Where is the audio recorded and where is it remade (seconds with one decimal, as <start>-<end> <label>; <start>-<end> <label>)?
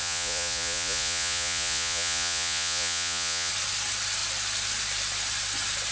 0.0-3.5 remade; 3.5-5.9 recorded